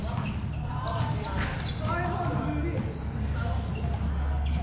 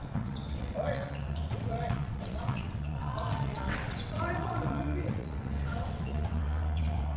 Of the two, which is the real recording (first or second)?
first